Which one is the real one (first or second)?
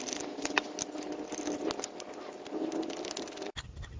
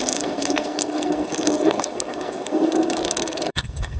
first